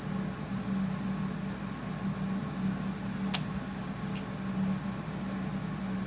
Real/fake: real